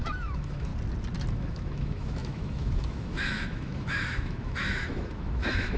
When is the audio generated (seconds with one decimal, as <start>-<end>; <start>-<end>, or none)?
0.0-0.7; 1.3-5.8